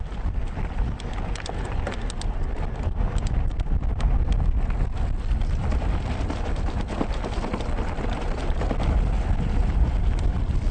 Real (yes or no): yes